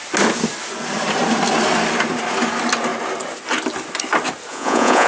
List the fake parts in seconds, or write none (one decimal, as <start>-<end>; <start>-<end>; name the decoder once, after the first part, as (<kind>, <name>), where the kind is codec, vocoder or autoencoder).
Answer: 4.5-5.1 (vocoder, Vocos)